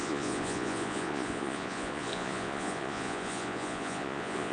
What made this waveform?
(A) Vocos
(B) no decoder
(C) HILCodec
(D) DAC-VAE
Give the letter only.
A